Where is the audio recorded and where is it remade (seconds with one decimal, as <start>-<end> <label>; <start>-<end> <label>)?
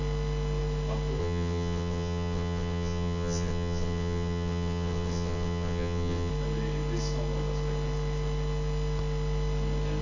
0.0-1.2 recorded; 1.2-6.3 remade; 6.3-10.0 recorded